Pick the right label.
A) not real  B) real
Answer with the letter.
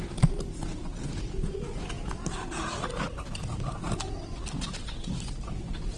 B